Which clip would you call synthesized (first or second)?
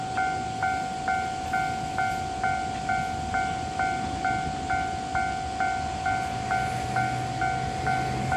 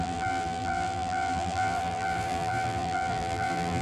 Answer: second